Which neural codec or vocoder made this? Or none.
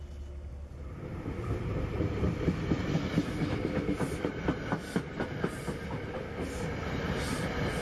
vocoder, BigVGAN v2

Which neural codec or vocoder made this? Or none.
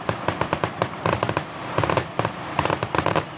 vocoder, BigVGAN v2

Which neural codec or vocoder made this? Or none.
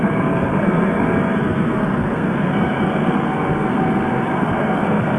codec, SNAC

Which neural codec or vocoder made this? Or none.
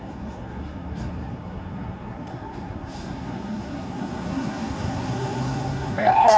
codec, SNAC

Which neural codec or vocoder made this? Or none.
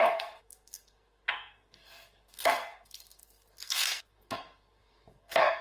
codec, SNAC